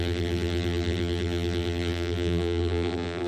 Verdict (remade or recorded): remade